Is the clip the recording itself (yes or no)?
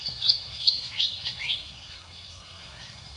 no